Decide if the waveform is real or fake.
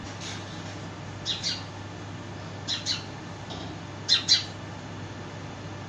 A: real